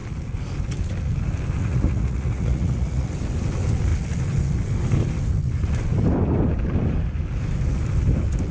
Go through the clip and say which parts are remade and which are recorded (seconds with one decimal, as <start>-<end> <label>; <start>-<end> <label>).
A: 0.0-1.6 recorded; 1.6-3.1 remade; 3.1-8.5 recorded